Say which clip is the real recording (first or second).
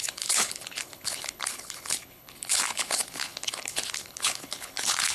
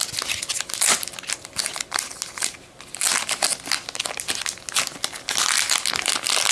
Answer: second